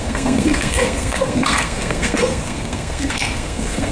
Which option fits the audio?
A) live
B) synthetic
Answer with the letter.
B